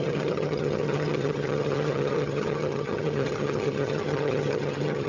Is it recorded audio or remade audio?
remade